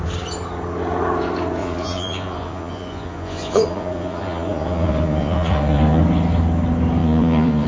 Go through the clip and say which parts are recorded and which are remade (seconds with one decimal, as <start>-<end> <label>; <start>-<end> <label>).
0.0-1.6 recorded; 1.6-6.0 remade; 6.0-7.0 recorded; 7.0-7.7 remade